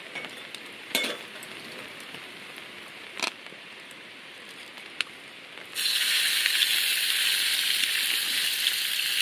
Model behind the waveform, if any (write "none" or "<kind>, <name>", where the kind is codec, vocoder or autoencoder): vocoder, BigVGAN v2